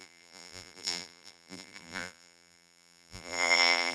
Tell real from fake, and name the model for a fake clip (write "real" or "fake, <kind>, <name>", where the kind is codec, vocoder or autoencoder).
fake, vocoder, BigVGAN v2